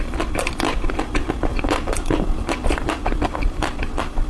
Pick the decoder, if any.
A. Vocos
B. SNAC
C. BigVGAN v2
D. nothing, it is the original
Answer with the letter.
C